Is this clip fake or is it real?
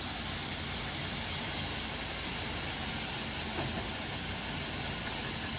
real